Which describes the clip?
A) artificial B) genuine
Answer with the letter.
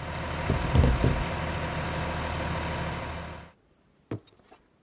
B